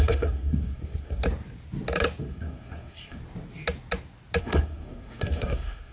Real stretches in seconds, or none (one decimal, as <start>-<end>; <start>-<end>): 1.2-2.2; 3.2-4.4